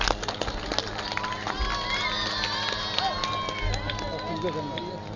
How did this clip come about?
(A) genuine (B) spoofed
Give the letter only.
A